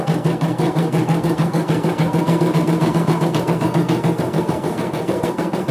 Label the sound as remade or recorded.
remade